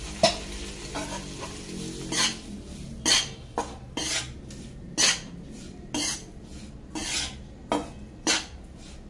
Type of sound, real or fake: real